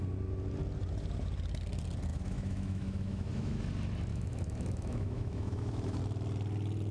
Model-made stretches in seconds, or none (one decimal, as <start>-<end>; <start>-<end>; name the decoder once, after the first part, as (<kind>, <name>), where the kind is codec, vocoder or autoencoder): 2.1-3.6 (autoencoder, DAC-VAE); 4.1-6.0